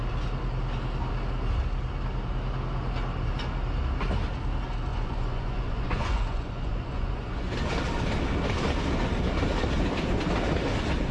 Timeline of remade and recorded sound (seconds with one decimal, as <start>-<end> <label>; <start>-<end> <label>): 0.0-4.9 recorded; 4.9-7.5 remade; 7.5-11.1 recorded